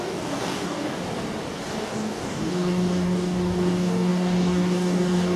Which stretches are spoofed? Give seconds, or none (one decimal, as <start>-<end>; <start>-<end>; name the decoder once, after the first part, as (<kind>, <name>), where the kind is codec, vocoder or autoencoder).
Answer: 0.0-1.0 (codec, DAC); 1.8-5.4